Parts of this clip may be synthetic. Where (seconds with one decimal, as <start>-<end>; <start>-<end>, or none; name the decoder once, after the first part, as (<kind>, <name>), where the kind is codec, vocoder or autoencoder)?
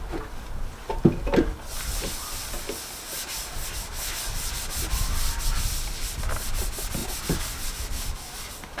none